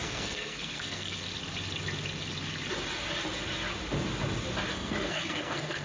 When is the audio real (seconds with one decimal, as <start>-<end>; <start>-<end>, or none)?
1.2-4.7

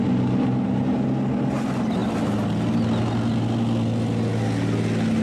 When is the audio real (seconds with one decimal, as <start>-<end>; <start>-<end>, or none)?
0.0-5.2

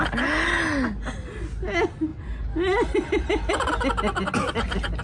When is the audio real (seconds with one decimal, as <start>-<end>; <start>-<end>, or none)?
0.0-5.0

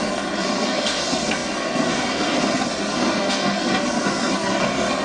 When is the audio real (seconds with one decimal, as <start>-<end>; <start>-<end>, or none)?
none